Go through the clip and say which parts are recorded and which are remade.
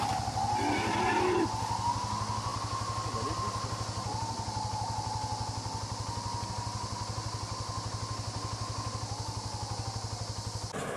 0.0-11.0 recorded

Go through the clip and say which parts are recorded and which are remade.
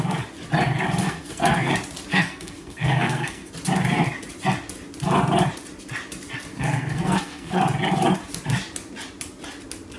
0.0-1.0 recorded; 1.0-1.7 remade; 1.7-2.1 recorded; 2.1-3.5 remade; 3.5-6.5 recorded; 6.5-7.6 remade; 7.6-10.0 recorded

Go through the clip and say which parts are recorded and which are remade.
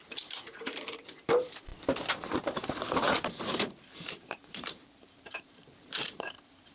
0.0-1.7 remade; 1.7-2.3 recorded; 2.3-6.7 remade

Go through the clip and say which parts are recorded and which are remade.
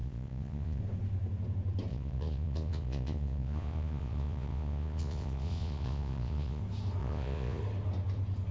0.0-0.8 remade; 0.8-1.9 recorded; 1.9-6.6 remade; 6.6-7.0 recorded; 7.0-7.6 remade; 7.6-8.5 recorded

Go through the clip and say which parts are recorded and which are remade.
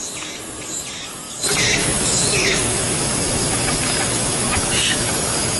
0.0-1.8 recorded; 1.8-5.6 remade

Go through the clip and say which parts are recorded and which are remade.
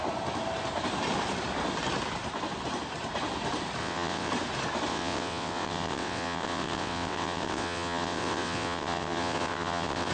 0.0-3.8 recorded; 3.8-4.3 remade; 4.3-4.9 recorded; 4.9-10.1 remade